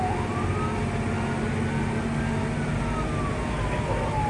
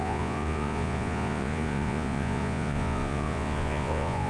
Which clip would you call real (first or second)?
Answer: first